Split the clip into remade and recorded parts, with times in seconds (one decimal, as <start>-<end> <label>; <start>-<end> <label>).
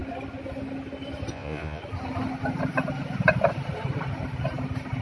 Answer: 0.0-1.3 recorded; 1.3-1.8 remade; 1.8-5.0 recorded